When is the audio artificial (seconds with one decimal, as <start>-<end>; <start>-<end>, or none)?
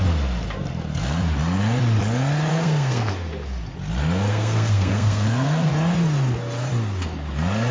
2.5-3.1; 4.3-5.7